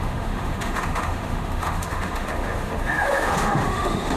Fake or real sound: fake